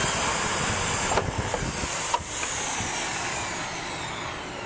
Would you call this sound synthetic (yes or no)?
yes